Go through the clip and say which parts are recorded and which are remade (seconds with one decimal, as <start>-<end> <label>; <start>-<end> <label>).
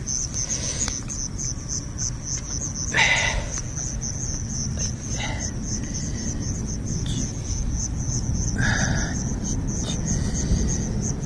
0.0-11.3 recorded